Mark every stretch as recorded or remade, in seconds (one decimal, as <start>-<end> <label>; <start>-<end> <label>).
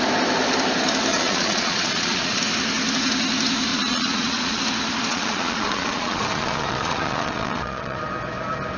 0.0-1.1 recorded; 1.1-2.4 remade; 2.4-3.7 recorded; 3.7-4.6 remade; 4.6-5.1 recorded; 5.1-8.0 remade; 8.0-8.8 recorded